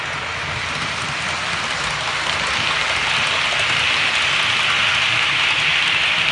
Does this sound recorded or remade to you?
recorded